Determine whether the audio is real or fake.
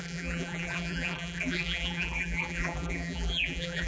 fake